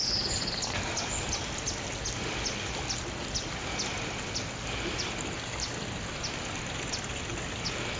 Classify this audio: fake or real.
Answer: real